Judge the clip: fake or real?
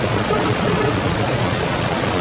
fake